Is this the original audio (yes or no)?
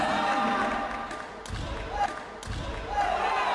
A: yes